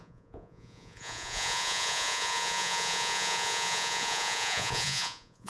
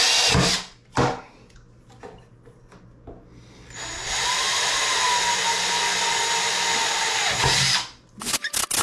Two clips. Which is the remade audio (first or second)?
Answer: first